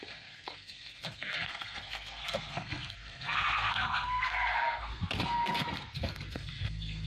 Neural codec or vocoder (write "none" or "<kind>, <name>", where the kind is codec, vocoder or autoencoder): codec, SNAC